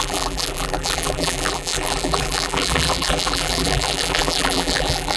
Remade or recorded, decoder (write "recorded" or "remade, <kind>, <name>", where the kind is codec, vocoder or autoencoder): remade, vocoder, BigVGAN v2